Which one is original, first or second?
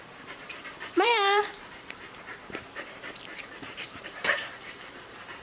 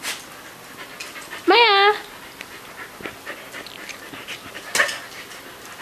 second